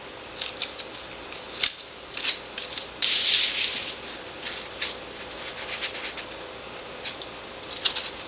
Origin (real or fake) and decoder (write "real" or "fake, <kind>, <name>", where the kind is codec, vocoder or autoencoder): real